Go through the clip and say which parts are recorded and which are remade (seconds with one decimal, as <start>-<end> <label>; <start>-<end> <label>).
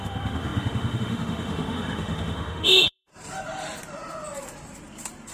0.0-3.1 remade; 3.1-5.3 recorded